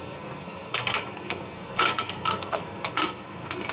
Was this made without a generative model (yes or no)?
no